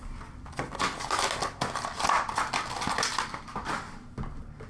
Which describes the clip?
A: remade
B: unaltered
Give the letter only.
B